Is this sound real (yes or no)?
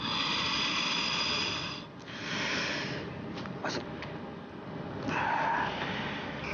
yes